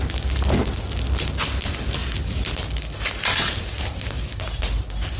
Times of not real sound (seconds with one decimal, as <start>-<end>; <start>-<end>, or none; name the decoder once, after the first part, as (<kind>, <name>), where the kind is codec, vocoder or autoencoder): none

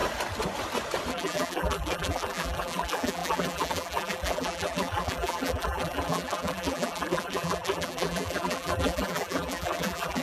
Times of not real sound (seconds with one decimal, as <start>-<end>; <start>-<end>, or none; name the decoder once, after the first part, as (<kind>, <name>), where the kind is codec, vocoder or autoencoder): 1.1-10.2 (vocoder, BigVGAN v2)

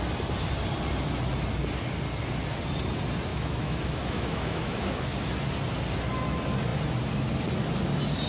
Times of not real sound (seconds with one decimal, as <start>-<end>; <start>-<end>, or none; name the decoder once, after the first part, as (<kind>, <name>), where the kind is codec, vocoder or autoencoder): 3.3-5.3 (autoencoder, DAC-VAE)

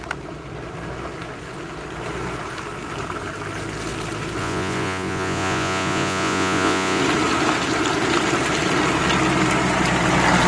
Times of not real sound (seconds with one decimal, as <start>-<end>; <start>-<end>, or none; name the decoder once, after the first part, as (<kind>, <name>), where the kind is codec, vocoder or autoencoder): 4.4-7.0 (vocoder, Vocos)

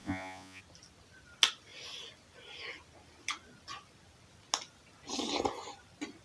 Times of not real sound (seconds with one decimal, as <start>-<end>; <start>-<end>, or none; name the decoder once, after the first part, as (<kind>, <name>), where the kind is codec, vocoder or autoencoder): 0.0-0.6 (vocoder, Vocos)

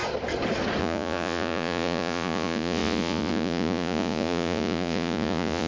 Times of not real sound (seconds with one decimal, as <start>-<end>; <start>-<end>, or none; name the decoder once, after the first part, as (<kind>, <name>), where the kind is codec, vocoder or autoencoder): 0.8-5.7 (vocoder, Vocos)

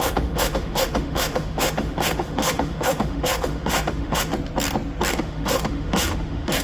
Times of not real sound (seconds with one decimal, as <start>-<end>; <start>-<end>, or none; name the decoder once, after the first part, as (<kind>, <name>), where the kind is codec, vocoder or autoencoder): 0.0-4.3 (autoencoder, DAC-VAE); 5.1-6.6